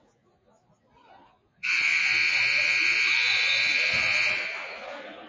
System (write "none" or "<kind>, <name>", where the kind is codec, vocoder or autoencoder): vocoder, Vocos